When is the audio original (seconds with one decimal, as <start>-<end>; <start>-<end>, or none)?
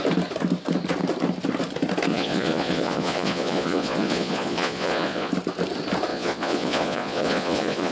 0.0-2.1; 5.3-6.1